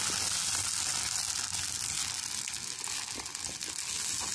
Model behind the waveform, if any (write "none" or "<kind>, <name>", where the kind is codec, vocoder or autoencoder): none